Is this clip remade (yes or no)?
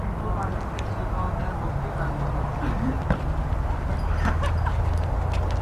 no